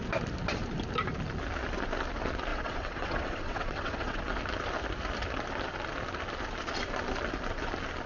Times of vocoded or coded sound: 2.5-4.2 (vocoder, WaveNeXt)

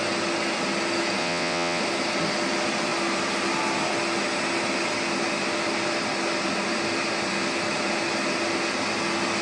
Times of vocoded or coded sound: 1.2-1.8 (vocoder, WaveNeXt)

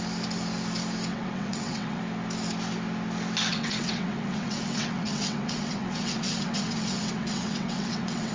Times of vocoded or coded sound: 1.1-2.0 (vocoder, WaveNeXt); 3.5-8.3

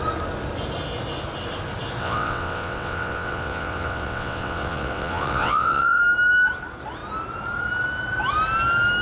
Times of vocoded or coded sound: 2.0-6.0 (vocoder, WaveNeXt)